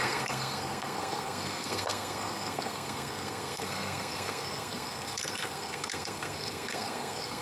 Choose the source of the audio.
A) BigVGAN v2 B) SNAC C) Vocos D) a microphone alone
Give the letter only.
B